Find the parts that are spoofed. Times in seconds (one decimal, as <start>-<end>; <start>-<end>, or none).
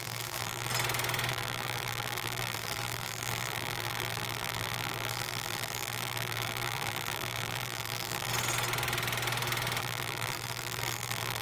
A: 0.0-0.7; 1.3-8.3; 9.8-11.4